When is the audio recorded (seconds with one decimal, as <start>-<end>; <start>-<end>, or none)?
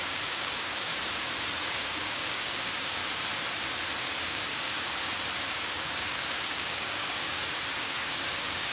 0.9-1.8; 3.0-4.2; 4.7-5.5; 7.4-7.9